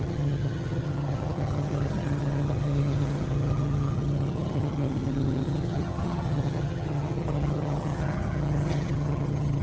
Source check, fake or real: fake